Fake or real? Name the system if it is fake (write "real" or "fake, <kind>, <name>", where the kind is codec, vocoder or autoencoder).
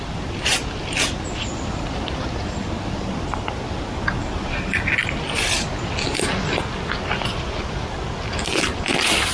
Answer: real